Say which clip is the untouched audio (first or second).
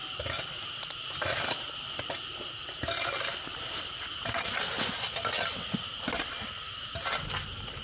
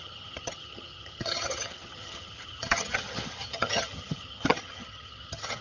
first